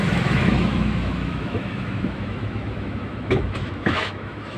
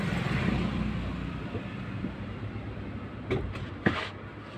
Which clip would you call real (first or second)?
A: second